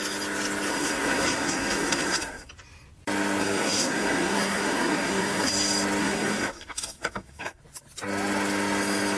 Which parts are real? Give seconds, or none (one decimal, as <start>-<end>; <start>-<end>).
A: 0.0-0.7; 2.5-3.4; 5.5-6.0; 7.6-9.2